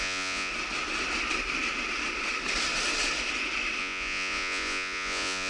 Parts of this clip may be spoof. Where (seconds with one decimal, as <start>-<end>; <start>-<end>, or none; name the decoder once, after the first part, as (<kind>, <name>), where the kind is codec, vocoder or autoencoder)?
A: 0.0-0.5 (vocoder, Vocos); 3.8-5.5